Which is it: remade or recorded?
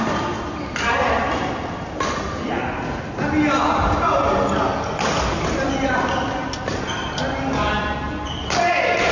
recorded